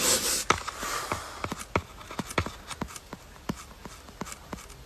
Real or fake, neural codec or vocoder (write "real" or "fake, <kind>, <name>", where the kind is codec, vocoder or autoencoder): real